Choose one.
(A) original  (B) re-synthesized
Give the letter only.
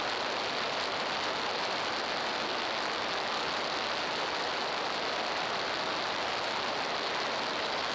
A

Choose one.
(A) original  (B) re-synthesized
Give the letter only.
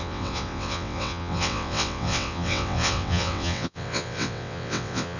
B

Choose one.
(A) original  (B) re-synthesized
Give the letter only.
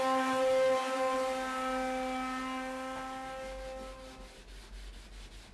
A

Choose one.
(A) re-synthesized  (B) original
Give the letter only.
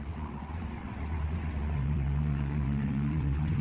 A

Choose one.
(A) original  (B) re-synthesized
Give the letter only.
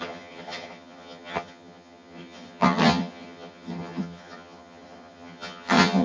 B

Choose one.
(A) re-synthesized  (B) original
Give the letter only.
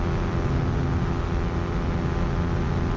B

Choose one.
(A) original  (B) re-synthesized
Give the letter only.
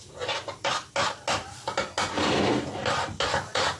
A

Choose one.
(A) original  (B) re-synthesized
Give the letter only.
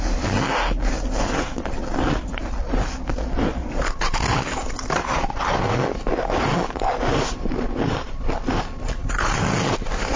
A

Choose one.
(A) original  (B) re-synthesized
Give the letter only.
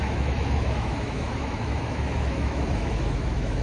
B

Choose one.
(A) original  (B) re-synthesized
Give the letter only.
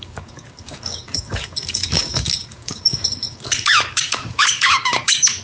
B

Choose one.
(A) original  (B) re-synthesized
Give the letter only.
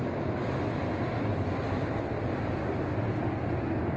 A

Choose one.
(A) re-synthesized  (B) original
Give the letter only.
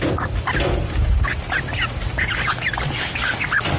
B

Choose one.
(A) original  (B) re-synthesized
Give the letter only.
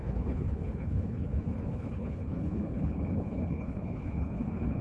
B